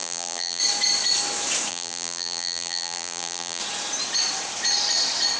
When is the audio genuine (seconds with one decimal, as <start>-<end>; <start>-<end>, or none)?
0.6-1.7; 3.6-5.4